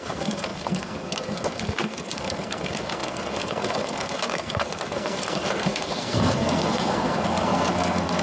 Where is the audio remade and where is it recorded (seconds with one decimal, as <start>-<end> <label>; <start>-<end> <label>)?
0.0-8.2 remade